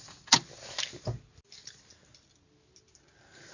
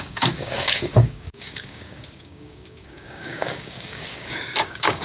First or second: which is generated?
second